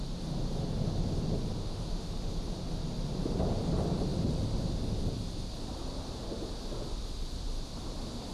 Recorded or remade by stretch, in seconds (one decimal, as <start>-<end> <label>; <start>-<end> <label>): 0.0-1.6 recorded; 1.6-2.4 remade; 2.4-8.3 recorded